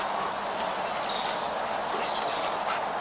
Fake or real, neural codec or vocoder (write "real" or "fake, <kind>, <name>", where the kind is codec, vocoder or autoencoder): real